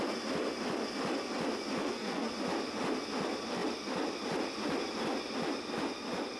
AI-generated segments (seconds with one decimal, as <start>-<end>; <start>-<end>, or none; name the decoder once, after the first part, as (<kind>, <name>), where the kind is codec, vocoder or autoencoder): 1.8-2.3 (codec, SNAC)